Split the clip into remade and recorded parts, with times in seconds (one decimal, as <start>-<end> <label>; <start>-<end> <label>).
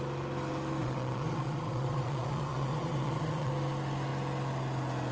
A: 0.0-0.8 recorded; 0.8-3.5 remade; 3.5-5.1 recorded